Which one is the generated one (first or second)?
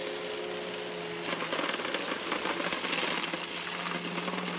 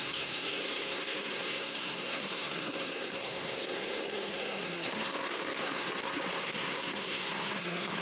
second